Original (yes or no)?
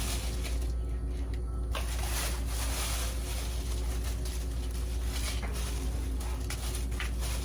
yes